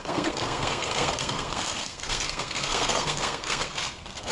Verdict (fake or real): fake